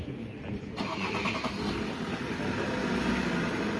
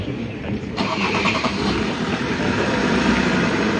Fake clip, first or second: second